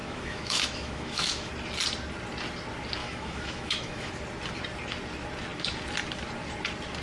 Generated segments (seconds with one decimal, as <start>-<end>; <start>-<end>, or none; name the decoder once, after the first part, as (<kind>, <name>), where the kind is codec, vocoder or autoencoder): 0.0-1.5 (autoencoder, DAC-VAE); 3.0-4.1

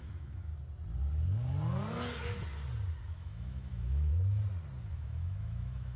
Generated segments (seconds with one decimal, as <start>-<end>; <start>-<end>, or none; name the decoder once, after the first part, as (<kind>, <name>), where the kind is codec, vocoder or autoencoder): 0.0-0.5 (autoencoder, DAC-VAE); 3.0-4.1; 4.9-6.0